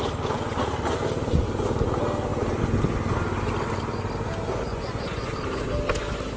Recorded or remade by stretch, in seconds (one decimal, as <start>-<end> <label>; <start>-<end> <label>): 0.0-4.5 recorded; 4.5-5.3 remade; 5.3-6.4 recorded